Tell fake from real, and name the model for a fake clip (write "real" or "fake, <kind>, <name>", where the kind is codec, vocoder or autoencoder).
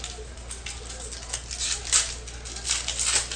real